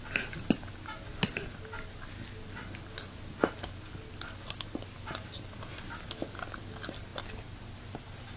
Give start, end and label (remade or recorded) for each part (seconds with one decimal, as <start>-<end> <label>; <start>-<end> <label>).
0.0-8.4 recorded